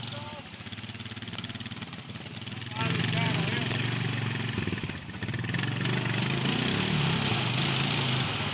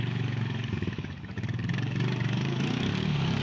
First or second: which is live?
first